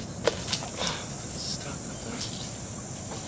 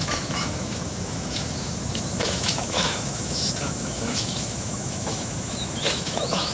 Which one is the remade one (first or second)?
second